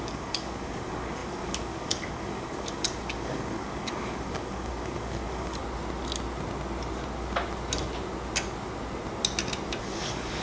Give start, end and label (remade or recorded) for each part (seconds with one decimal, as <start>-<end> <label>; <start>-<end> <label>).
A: 0.0-5.6 remade; 5.6-9.8 recorded; 9.8-10.4 remade